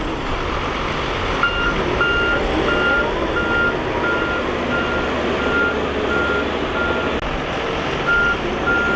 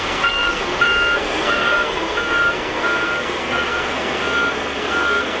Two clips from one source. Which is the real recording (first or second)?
first